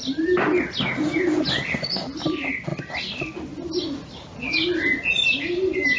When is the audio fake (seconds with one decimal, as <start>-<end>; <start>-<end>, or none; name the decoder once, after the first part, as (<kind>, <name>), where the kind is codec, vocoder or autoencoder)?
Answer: none